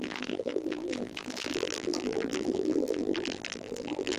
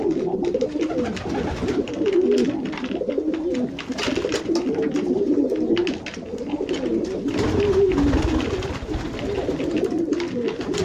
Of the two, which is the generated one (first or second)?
first